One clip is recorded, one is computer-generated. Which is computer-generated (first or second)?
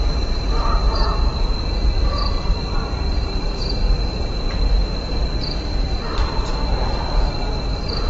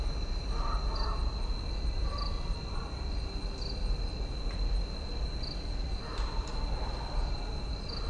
first